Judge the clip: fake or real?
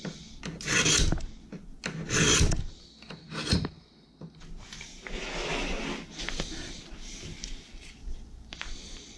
real